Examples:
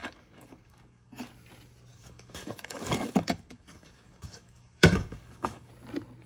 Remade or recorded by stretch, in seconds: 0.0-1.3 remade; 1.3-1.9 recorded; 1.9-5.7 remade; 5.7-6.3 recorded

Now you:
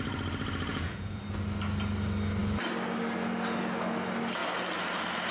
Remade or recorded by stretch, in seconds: 0.0-0.7 recorded; 0.7-1.2 remade; 1.2-5.3 recorded

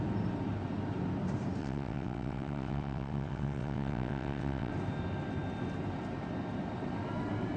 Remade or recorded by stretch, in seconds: 0.0-1.6 recorded; 1.6-4.7 remade; 4.7-7.6 recorded

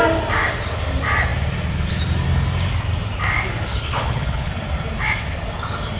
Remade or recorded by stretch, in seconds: 0.0-3.7 recorded; 3.7-4.5 remade; 4.5-6.0 recorded

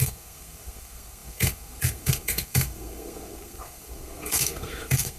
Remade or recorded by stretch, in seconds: 0.0-5.2 remade

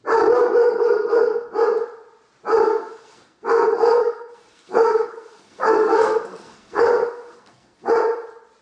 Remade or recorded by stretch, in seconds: 0.0-0.6 recorded; 0.6-1.5 remade; 1.5-2.7 recorded; 2.7-7.9 remade; 7.9-8.6 recorded

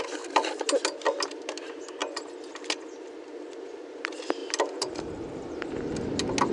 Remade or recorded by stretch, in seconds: 0.0-6.5 recorded